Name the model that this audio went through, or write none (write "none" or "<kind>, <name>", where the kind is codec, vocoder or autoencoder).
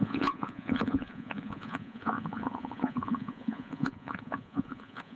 vocoder, Vocos